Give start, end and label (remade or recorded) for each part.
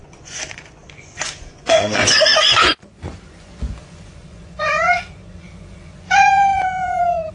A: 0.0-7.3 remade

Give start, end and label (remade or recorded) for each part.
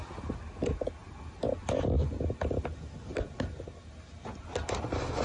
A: 0.0-5.2 recorded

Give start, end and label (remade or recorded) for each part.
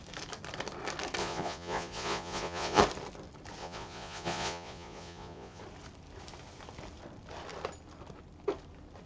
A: 0.0-1.2 recorded; 1.2-2.8 remade; 2.8-3.6 recorded; 3.6-5.6 remade; 5.6-9.1 recorded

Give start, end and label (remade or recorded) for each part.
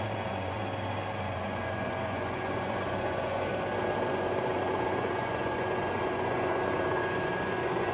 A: 0.0-0.6 remade; 0.6-1.2 recorded; 1.2-3.5 remade; 3.5-4.1 recorded; 4.1-7.9 remade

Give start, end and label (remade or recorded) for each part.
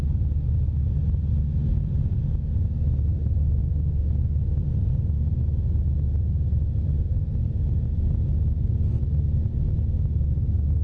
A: 0.0-3.6 recorded; 3.6-4.6 remade; 4.6-10.8 recorded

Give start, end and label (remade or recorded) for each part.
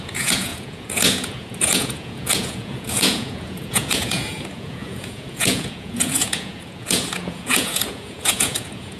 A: 0.0-9.0 remade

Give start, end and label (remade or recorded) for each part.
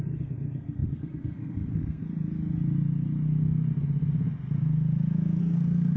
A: 0.0-2.0 remade; 2.0-5.4 recorded; 5.4-6.0 remade